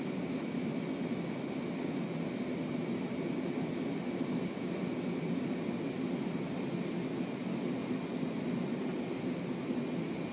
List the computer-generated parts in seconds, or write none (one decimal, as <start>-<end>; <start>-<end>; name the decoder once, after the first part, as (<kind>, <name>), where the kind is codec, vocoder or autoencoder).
none